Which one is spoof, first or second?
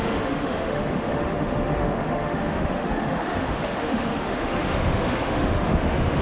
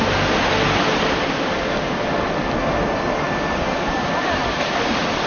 first